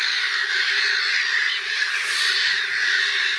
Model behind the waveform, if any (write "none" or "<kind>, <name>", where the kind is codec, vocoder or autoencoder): none